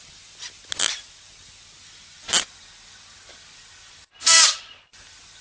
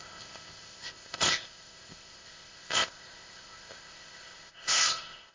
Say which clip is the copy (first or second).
second